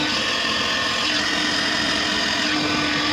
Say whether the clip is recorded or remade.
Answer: recorded